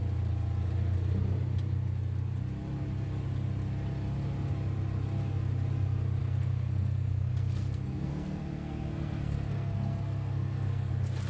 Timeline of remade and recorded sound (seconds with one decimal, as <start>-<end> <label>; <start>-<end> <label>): 0.0-6.2 recorded; 6.2-10.9 remade; 10.9-11.3 recorded